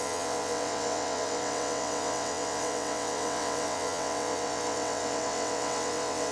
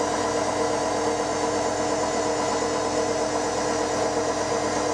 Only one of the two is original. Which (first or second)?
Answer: second